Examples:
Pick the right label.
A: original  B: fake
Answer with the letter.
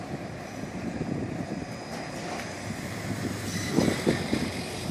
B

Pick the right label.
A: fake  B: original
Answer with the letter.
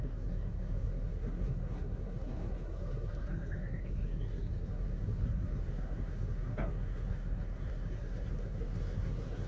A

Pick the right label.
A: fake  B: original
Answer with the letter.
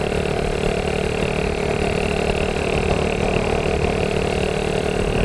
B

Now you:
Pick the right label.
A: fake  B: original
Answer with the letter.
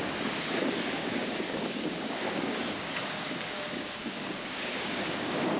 A